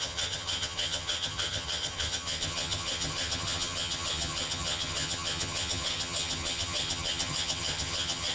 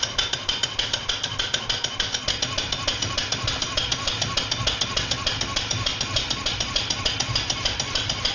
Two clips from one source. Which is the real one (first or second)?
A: second